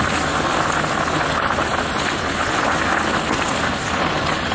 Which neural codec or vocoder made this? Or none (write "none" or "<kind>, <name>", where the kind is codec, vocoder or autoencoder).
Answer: none